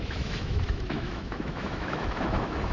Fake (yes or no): yes